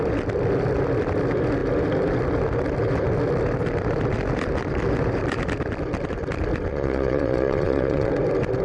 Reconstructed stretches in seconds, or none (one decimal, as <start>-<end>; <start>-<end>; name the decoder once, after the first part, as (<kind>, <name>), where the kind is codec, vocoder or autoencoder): 6.7-8.1 (vocoder, Vocos)

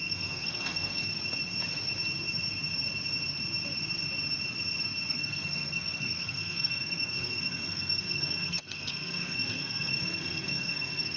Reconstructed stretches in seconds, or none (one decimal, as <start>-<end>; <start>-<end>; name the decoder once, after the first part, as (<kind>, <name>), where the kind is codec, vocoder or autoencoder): 0.0-1.1 (codec, SNAC); 5.1-11.2

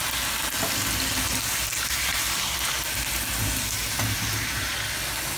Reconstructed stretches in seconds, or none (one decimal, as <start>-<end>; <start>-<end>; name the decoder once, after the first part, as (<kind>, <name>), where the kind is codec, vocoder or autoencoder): 1.7-4.7 (vocoder, BigVGAN v2)

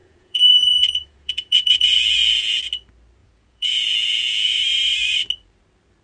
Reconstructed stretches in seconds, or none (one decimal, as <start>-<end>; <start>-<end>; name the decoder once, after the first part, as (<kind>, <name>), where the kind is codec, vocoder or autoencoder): 0.0-2.6 (vocoder, Vocos); 3.2-4.5

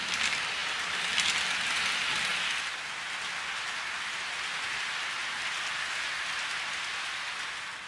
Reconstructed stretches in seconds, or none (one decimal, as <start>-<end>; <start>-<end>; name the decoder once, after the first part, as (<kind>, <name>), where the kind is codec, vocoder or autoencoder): none

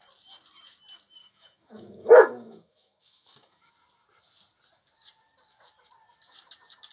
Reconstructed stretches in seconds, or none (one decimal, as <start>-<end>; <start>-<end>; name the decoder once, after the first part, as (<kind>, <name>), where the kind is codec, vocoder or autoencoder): 1.2-3.7 (autoencoder, DAC-VAE)

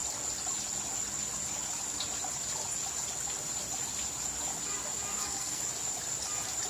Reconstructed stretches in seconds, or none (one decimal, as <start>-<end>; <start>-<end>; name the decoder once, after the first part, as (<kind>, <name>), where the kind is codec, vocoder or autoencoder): 5.1-5.6 (codec, SNAC)